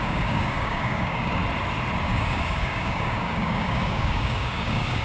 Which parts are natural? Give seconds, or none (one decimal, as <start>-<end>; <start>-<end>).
1.4-2.0